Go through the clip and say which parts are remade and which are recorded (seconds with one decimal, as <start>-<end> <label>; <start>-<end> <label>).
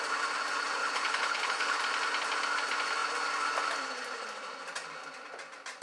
0.0-0.8 recorded; 0.8-1.8 remade; 1.8-5.8 recorded